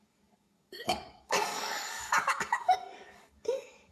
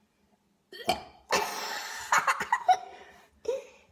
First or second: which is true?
second